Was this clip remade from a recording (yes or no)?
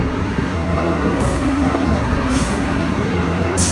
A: yes